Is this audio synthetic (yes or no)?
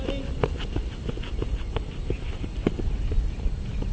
no